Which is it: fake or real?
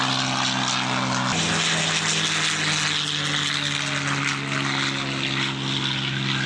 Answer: real